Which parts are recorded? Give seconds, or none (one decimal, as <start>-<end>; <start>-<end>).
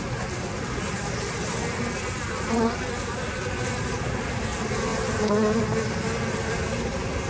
0.0-7.3